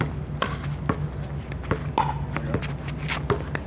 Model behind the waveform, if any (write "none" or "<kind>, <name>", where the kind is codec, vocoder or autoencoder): none